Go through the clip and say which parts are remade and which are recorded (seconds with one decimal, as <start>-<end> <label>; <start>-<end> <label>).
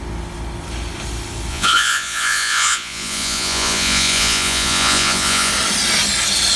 0.0-1.5 recorded; 1.5-5.5 remade; 5.5-6.6 recorded